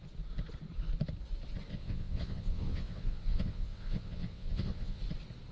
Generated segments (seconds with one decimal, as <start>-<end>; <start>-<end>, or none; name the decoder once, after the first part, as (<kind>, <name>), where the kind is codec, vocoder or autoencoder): 1.7-5.0 (vocoder, WaveNeXt)